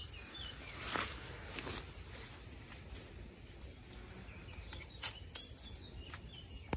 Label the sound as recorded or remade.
recorded